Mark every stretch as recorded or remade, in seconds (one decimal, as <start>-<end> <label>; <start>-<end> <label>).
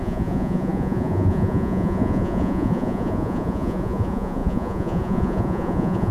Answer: 0.0-6.1 remade